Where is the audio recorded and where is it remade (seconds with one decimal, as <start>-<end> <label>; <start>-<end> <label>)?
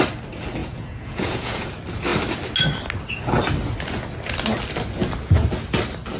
0.0-0.6 recorded; 0.6-1.7 remade; 1.7-6.2 recorded